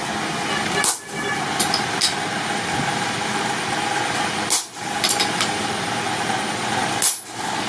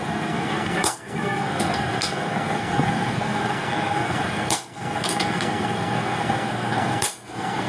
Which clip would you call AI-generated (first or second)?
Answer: second